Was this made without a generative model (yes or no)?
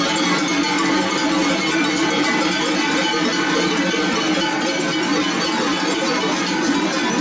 yes